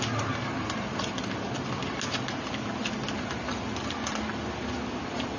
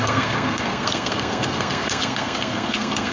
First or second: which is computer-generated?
second